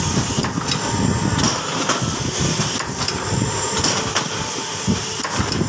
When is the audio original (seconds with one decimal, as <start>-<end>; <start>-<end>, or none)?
0.0-5.7